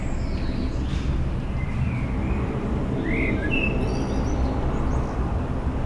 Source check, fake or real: real